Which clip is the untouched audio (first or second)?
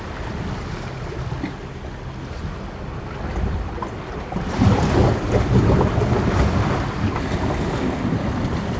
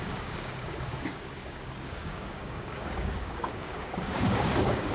first